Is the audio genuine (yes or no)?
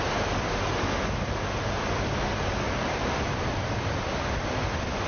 yes